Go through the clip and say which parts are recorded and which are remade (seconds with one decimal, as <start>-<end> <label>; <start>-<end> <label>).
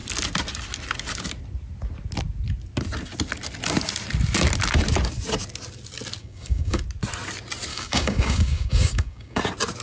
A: 0.0-6.2 recorded; 6.2-6.8 remade; 6.8-7.7 recorded; 7.7-9.4 remade; 9.4-9.8 recorded